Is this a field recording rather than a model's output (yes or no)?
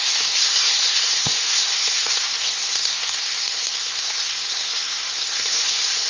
no